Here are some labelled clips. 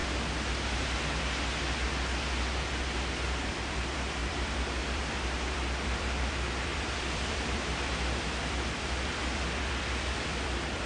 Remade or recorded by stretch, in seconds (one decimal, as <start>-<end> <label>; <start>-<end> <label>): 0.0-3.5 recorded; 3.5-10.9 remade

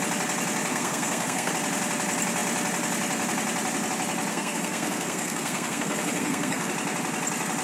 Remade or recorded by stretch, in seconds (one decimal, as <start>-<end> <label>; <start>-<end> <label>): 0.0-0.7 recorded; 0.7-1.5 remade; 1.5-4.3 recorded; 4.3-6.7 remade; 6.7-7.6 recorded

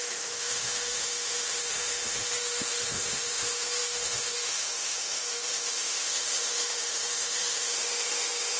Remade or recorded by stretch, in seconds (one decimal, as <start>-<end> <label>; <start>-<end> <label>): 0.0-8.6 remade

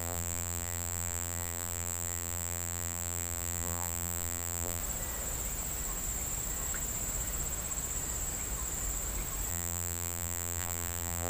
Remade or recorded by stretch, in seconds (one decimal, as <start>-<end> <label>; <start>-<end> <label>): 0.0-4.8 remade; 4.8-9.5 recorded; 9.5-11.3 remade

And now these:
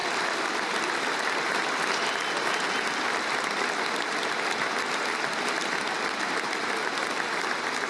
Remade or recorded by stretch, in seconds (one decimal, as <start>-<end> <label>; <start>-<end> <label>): 0.0-7.9 recorded

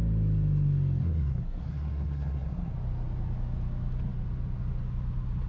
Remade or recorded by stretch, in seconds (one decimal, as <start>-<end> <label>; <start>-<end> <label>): 0.0-1.0 recorded; 1.0-2.7 remade; 2.7-5.5 recorded

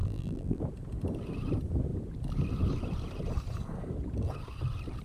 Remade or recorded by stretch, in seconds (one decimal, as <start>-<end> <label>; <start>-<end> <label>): 0.0-0.6 remade; 0.6-5.0 recorded

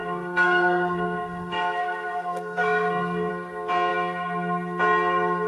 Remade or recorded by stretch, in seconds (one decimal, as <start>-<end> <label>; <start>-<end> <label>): 0.0-3.3 remade; 3.3-5.5 recorded